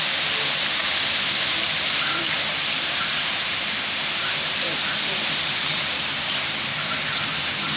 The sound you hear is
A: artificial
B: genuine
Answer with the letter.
A